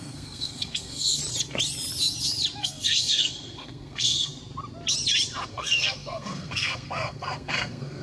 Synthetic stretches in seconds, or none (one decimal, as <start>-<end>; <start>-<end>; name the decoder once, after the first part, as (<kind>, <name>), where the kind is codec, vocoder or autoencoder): 0.0-1.2 (codec, SNAC); 2.6-4.4; 5.5-8.0